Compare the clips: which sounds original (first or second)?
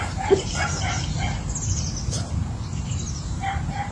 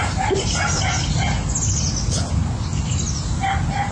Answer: second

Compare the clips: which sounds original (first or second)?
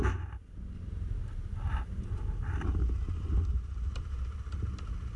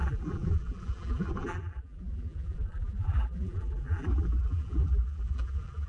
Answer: first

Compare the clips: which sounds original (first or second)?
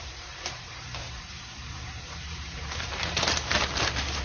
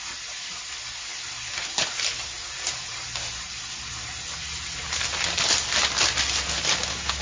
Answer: second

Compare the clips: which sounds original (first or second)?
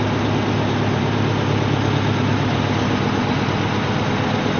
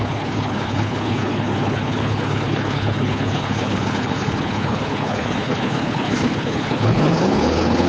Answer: first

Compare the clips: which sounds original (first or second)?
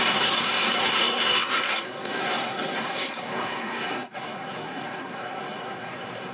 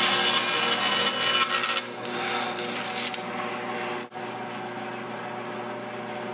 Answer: second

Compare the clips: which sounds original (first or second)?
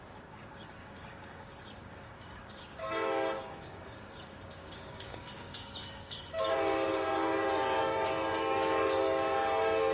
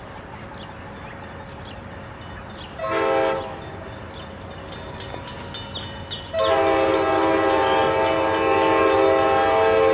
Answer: second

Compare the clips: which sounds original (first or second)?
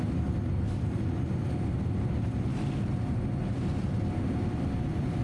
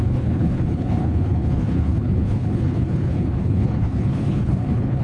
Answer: first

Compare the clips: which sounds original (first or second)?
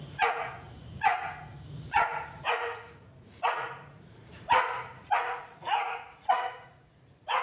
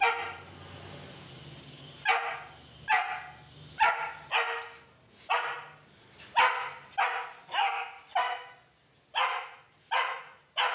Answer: second